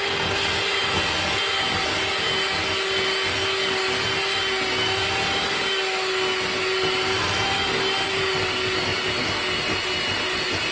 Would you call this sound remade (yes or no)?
no